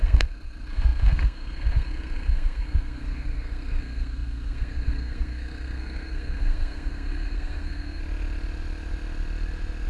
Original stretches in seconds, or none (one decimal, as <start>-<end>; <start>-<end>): 8.0-9.9

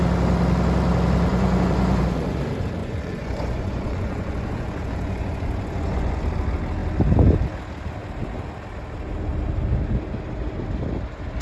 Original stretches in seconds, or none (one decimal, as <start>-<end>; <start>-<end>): 0.0-1.3; 2.4-2.8; 6.2-11.4

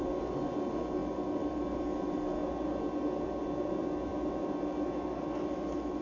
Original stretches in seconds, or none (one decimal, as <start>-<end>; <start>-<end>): 0.0-6.0

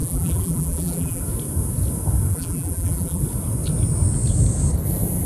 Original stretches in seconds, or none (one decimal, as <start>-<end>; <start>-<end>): 1.2-2.3; 3.2-5.3

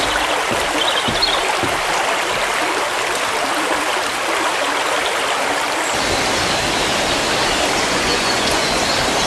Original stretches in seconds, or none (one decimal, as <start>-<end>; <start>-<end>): 0.0-7.8; 8.8-9.3

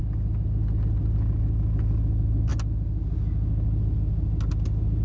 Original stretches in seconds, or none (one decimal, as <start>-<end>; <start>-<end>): 0.0-5.0